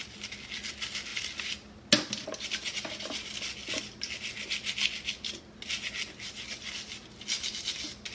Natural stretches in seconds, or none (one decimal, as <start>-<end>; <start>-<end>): 0.0-8.1